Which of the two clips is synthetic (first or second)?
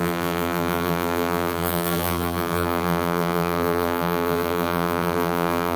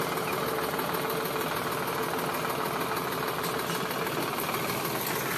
first